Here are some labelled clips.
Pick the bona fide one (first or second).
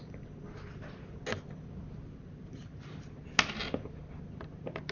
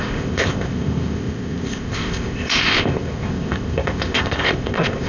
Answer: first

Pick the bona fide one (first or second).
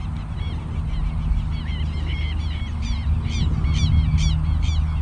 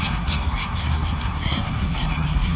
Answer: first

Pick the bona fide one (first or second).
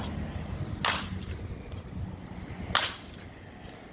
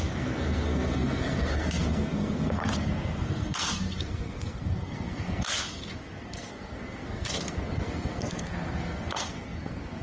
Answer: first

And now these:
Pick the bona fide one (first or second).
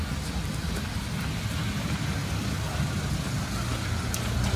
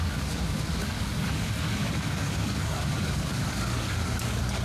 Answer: first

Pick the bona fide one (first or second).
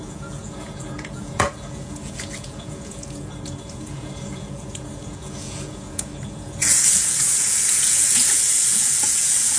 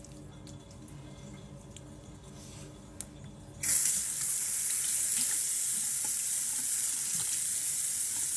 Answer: second